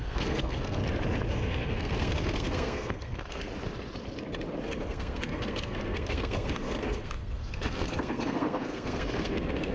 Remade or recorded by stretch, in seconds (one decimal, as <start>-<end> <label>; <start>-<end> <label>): 0.0-0.8 remade; 0.8-1.3 recorded; 1.3-3.5 remade; 3.5-4.6 recorded; 4.6-9.7 remade

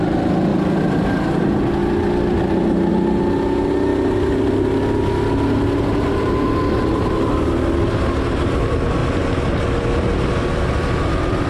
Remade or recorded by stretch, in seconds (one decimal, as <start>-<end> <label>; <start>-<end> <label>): 0.0-11.5 recorded